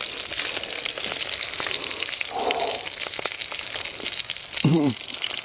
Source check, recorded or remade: recorded